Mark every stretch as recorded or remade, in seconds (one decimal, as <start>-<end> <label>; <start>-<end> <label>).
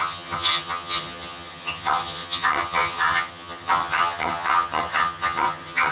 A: 0.0-5.9 remade